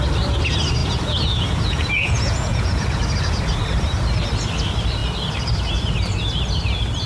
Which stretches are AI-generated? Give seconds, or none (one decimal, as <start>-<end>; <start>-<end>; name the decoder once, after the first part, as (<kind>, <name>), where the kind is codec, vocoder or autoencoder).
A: 0.8-3.0 (vocoder, Vocos)